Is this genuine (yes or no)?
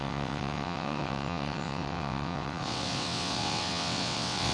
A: no